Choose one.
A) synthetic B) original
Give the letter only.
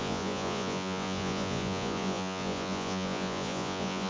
A